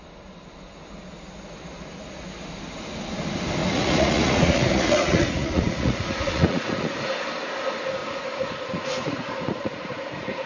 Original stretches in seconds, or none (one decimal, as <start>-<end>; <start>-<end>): 0.0-3.6; 7.1-8.0